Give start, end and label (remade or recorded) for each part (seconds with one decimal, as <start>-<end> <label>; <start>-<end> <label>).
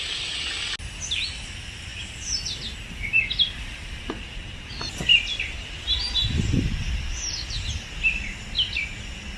0.0-1.9 recorded; 1.9-4.0 remade; 4.0-9.4 recorded